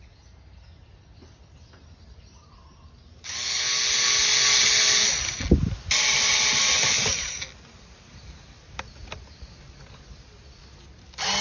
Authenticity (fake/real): real